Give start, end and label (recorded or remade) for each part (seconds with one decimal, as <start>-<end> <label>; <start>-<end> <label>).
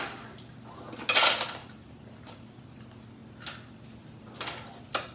0.0-1.6 recorded; 1.6-2.6 remade; 2.6-5.1 recorded